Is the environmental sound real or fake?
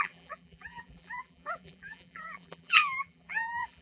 fake